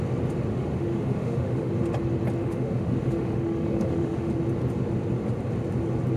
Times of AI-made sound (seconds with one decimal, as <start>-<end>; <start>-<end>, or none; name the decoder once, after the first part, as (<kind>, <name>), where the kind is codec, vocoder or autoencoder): 0.5-1.7 (autoencoder, DAC-VAE); 2.4-4.3